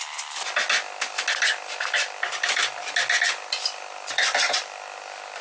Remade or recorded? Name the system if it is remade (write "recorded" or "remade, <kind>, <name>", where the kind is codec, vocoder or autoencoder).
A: recorded